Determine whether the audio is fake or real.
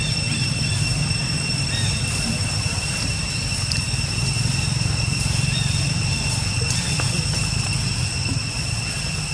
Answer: fake